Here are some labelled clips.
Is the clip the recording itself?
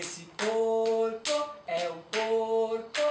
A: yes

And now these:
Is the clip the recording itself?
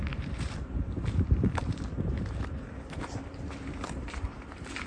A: no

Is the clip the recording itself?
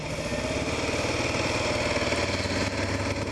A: yes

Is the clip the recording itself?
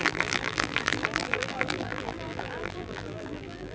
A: no